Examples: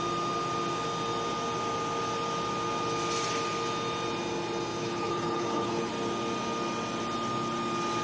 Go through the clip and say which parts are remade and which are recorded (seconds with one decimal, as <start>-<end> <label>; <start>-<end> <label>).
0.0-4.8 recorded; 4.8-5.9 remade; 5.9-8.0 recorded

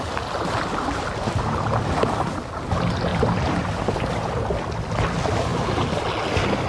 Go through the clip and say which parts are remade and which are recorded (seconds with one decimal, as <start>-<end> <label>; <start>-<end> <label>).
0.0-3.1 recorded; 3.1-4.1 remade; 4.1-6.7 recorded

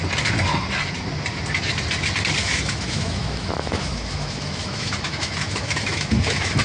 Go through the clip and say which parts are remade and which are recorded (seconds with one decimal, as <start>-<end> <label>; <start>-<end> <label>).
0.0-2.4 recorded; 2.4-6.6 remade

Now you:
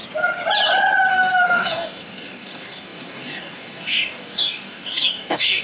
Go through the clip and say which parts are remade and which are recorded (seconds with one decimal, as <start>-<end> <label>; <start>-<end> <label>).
0.0-1.1 recorded; 1.1-5.6 remade